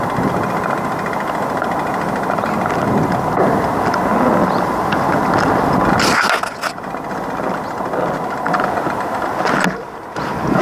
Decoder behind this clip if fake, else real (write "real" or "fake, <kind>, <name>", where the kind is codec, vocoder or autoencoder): real